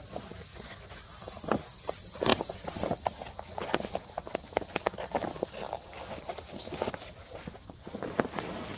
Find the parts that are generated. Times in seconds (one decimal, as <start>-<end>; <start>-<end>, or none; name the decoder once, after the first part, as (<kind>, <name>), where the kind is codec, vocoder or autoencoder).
0.5-1.0 (vocoder, Vocos)